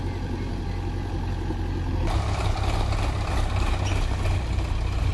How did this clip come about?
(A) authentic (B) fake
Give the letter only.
A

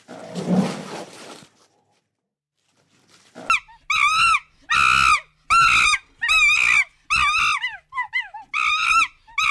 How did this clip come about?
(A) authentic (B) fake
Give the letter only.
A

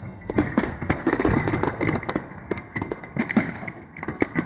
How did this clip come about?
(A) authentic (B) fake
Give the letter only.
B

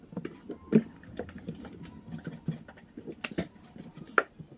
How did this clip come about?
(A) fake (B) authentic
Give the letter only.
B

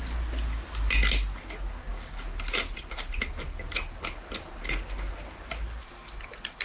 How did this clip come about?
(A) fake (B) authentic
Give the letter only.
B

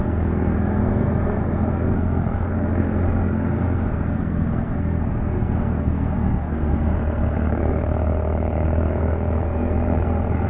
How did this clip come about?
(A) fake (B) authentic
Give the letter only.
A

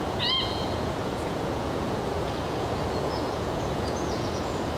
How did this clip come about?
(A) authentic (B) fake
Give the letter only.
B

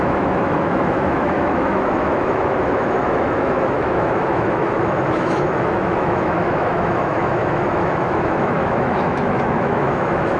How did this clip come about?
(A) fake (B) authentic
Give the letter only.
A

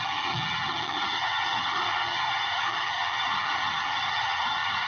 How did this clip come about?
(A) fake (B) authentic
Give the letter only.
A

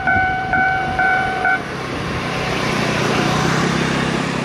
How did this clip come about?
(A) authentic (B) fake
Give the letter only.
B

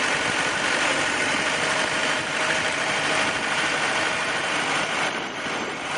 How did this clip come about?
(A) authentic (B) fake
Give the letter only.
B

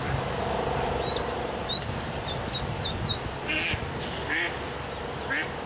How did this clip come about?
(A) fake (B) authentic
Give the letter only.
B